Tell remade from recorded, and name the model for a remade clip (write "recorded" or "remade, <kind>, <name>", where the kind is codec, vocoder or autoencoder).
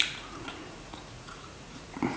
remade, vocoder, Vocos